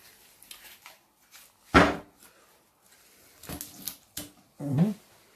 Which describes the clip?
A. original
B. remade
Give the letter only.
A